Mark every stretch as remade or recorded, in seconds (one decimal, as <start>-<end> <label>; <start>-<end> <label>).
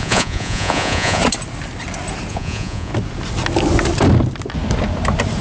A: 0.0-1.2 remade; 1.2-2.3 recorded; 2.3-2.9 remade; 2.9-5.4 recorded